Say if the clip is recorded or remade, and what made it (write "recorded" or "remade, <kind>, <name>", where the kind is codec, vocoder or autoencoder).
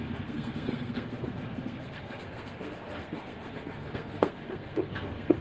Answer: remade, codec, SNAC